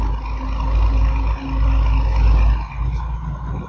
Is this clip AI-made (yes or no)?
no